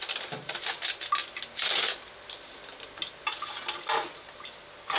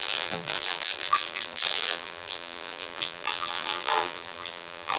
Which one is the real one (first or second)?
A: first